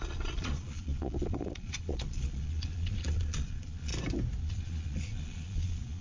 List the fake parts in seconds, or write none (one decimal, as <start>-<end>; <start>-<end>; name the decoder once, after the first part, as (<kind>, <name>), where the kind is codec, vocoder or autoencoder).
0.0-3.9 (vocoder, Vocos); 4.4-6.0